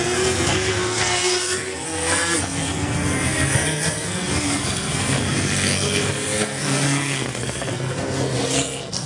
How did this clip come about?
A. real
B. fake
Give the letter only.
B